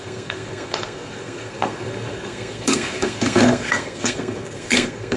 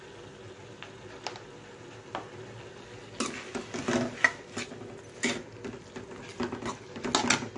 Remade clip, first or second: first